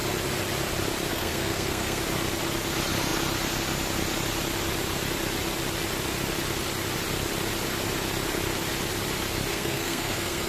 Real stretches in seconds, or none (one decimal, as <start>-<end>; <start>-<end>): 0.0-1.1; 2.0-9.5